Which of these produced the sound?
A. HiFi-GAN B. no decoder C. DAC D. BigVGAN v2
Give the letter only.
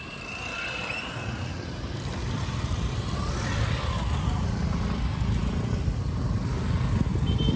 B